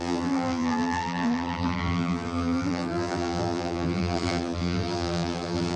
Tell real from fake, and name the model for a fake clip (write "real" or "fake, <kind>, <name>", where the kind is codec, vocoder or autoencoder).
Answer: fake, vocoder, BigVGAN v2